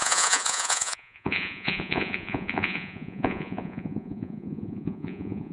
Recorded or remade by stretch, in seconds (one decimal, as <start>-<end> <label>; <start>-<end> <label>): 0.0-5.5 remade